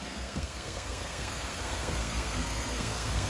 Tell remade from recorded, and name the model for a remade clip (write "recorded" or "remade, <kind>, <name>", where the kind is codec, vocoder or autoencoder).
remade, codec, SNAC